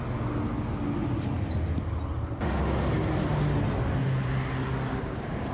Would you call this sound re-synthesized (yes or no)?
no